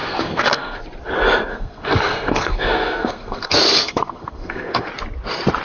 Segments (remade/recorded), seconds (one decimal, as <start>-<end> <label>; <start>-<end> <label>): 0.0-0.8 remade; 0.8-1.5 recorded; 1.5-4.9 remade; 4.9-5.6 recorded